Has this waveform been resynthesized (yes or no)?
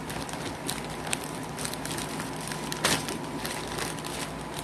yes